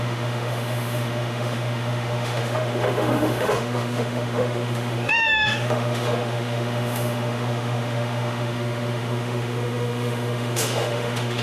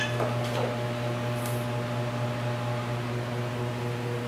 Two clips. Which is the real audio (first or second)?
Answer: second